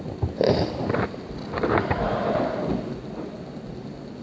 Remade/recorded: recorded